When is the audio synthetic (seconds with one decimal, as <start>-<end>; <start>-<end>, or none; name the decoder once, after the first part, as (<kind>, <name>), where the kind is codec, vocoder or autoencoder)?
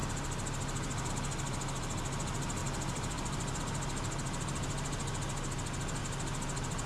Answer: 2.6-3.6 (vocoder, BigVGAN v2)